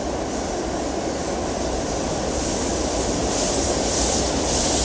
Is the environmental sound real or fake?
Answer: real